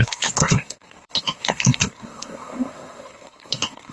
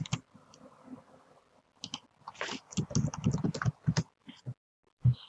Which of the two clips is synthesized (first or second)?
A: first